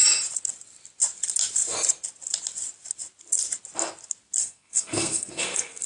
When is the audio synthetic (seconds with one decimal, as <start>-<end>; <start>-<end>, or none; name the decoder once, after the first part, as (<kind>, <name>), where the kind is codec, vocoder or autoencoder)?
4.4-5.9 (codec, SNAC)